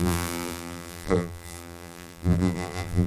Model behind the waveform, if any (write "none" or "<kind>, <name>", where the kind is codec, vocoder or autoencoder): vocoder, BigVGAN v2